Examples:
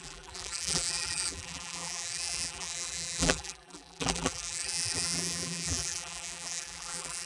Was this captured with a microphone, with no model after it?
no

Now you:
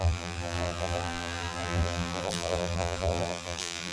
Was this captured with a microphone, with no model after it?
no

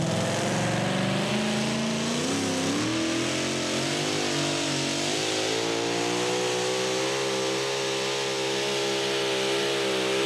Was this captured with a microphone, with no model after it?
yes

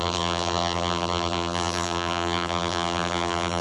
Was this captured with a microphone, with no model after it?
no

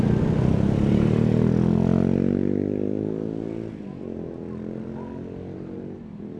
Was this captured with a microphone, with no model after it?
yes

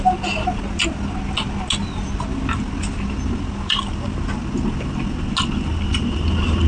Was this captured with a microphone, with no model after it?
yes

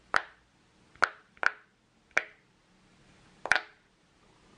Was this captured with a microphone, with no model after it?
yes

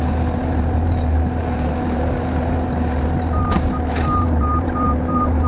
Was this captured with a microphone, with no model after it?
no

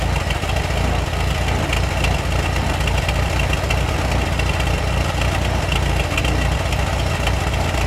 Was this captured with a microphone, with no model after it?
yes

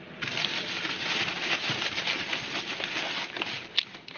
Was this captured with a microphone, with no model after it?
no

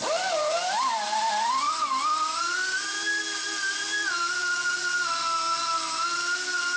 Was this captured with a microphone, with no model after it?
no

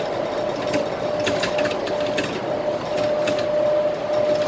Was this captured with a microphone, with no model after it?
yes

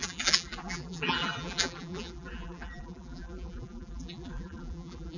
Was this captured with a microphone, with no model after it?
no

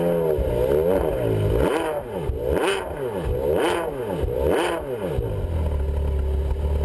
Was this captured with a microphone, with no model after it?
yes